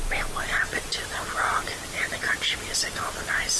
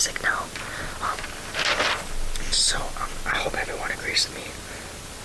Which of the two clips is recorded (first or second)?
second